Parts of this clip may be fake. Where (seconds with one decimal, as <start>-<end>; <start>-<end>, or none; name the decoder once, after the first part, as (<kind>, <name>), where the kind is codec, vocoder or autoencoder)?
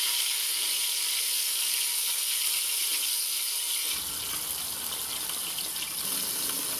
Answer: 2.9-3.7 (vocoder, BigVGAN v2)